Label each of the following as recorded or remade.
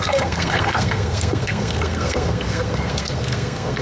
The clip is remade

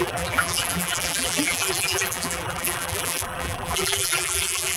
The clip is remade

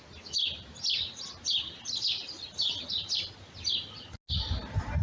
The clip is recorded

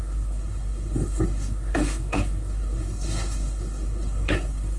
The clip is remade